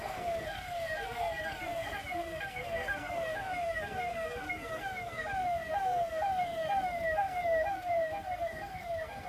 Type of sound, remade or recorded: remade